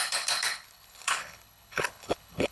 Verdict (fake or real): fake